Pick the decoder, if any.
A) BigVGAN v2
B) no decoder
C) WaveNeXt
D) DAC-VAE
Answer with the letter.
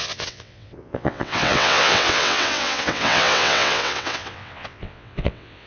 C